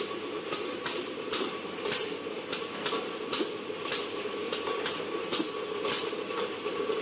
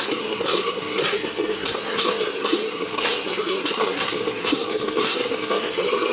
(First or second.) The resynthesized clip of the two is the second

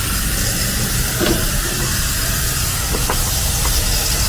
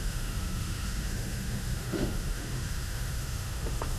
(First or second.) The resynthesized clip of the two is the second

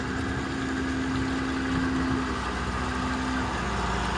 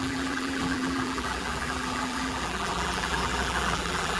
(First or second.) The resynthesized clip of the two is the second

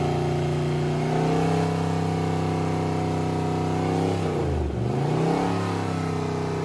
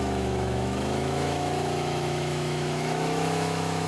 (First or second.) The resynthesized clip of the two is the second